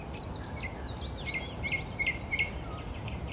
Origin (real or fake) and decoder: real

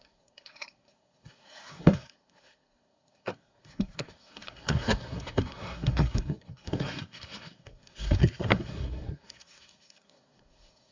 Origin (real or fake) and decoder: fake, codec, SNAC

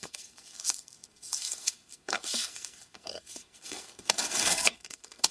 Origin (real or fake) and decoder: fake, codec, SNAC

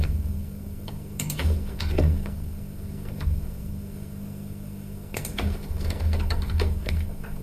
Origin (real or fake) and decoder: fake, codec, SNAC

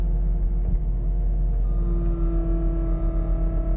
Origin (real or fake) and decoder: real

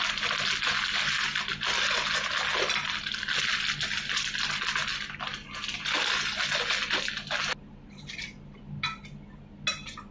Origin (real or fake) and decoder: real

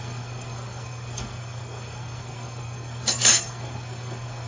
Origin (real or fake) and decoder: fake, codec, SNAC